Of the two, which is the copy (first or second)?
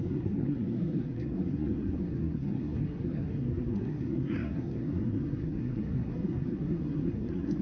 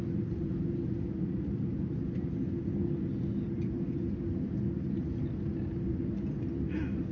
first